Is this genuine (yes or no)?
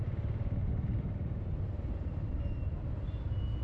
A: yes